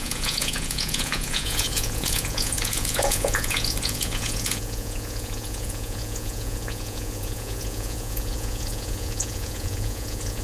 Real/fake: fake